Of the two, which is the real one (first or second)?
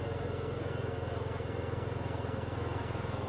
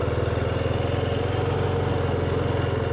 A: second